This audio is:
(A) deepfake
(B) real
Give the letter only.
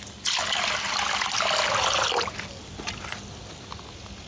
B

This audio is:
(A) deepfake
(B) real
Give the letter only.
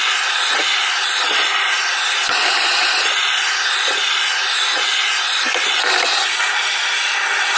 B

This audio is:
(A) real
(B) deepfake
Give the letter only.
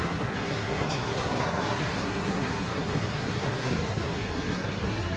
B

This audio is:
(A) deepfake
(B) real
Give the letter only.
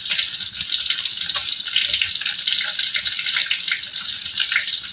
B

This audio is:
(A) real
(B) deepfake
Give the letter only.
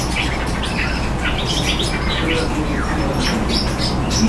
A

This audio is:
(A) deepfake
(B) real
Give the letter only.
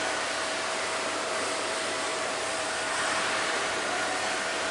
A